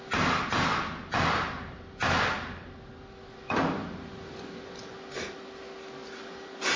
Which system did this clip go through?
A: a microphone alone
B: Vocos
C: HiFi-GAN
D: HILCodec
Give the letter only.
A